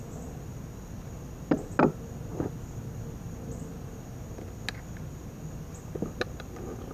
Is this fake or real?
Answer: real